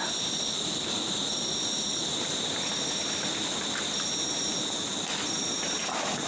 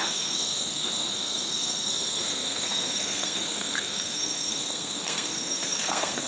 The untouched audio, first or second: first